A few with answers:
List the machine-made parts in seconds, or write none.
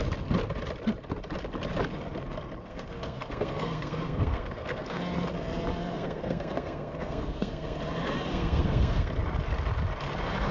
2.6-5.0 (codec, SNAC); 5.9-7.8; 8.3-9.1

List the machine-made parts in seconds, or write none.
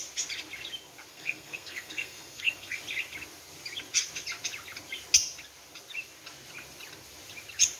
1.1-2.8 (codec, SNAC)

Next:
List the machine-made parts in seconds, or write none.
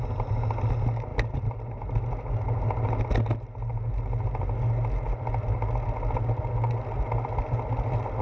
none